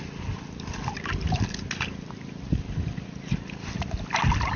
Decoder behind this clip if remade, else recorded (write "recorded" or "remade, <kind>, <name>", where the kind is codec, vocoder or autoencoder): recorded